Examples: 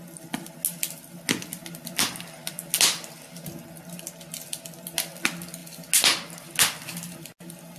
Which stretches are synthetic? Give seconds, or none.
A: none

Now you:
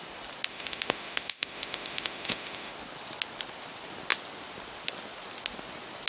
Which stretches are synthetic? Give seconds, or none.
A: 0.5-2.7 (autoencoder, DAC-VAE)